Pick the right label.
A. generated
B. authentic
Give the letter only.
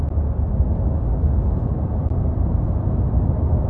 B